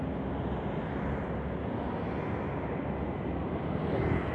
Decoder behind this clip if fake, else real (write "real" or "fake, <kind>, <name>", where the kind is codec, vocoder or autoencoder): real